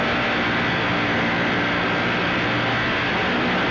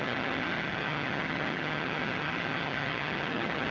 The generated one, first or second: second